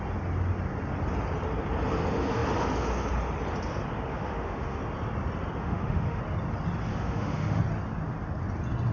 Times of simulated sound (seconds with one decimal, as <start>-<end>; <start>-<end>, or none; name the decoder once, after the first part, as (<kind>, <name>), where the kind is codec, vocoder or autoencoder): 4.1-4.8 (autoencoder, DAC-VAE); 5.6-6.2; 6.9-7.6